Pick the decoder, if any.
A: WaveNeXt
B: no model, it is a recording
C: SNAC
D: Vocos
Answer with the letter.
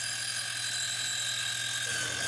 B